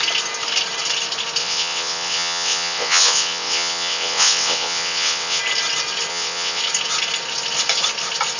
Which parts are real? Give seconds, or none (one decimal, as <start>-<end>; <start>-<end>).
0.0-1.4; 5.4-6.1; 6.6-8.4